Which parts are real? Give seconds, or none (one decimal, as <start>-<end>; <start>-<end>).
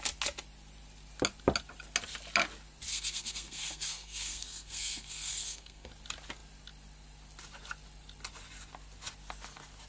0.0-2.9; 5.9-9.9